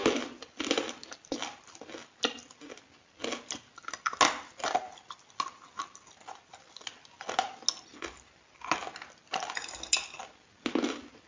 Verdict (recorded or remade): recorded